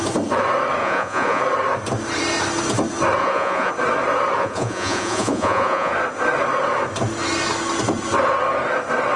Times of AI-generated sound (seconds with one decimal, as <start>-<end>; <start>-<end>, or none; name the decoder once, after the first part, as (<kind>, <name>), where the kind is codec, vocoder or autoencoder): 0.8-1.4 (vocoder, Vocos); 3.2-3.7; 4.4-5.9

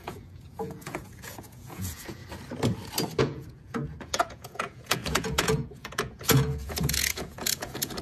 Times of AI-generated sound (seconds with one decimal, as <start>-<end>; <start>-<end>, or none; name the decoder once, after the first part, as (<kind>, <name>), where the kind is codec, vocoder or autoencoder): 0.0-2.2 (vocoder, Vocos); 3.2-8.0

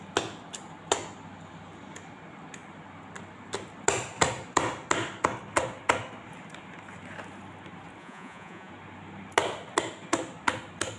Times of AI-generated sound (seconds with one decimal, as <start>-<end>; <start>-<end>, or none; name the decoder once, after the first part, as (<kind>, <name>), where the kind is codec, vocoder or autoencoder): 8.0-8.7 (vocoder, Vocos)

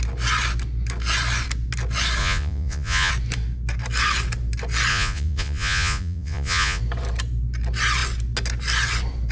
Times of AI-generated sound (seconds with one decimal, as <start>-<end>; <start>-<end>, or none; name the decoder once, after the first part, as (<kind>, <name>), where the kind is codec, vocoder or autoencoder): 2.2-3.1 (vocoder, Vocos); 4.9-6.8